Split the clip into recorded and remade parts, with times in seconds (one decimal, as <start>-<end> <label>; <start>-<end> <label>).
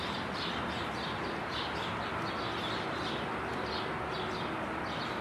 0.0-5.2 recorded